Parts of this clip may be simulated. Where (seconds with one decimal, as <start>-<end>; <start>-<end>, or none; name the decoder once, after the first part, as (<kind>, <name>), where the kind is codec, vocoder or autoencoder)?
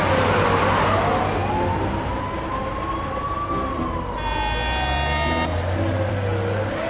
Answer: none